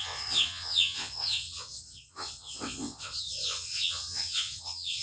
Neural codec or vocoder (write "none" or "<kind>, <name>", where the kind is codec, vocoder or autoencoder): vocoder, WaveNeXt